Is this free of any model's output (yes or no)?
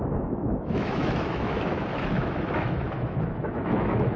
no